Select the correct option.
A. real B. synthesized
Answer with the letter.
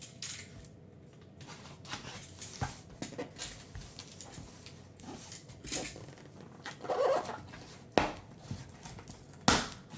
A